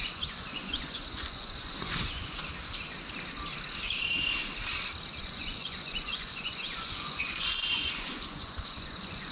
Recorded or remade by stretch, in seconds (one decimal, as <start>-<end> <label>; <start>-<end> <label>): 0.0-2.4 remade; 2.4-5.2 recorded; 5.2-9.3 remade